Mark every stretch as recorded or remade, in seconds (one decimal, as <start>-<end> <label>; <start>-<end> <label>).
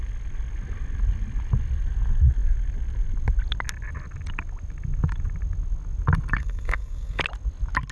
0.0-6.4 recorded; 6.4-7.2 remade; 7.2-7.9 recorded